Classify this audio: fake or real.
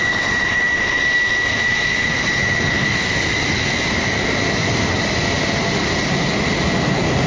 real